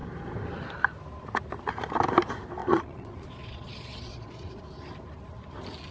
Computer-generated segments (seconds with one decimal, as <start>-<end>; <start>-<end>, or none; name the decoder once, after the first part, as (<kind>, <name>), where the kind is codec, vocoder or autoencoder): 2.6-4.6 (vocoder, Vocos)

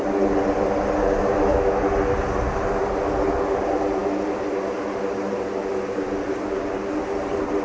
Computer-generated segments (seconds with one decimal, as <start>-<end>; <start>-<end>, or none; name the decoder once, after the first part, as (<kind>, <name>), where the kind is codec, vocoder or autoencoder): 1.2-1.8 (autoencoder, DAC-VAE)

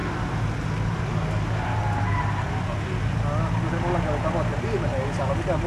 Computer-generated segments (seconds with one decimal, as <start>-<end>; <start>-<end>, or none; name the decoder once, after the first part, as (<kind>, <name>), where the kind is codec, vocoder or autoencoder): none

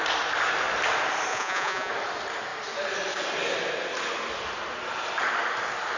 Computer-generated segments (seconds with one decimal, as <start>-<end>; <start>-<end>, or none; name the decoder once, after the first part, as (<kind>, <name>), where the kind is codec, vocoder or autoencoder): 1.3-1.9 (vocoder, Vocos)

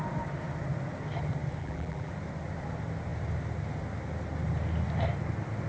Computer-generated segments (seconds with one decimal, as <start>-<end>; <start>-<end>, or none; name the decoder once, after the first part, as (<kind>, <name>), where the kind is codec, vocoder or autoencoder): 1.6-2.1 (vocoder, BigVGAN v2)